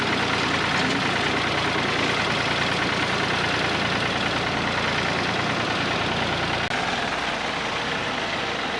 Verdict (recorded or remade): recorded